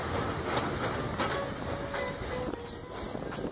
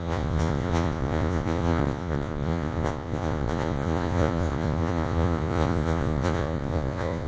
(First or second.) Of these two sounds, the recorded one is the first